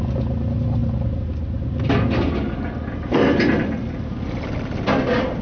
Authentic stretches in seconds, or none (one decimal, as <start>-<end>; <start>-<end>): 0.0-5.4